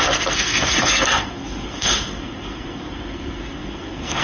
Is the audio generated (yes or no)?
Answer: yes